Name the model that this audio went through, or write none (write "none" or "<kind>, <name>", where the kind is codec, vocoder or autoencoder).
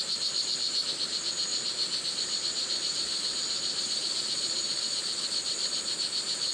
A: vocoder, BigVGAN v2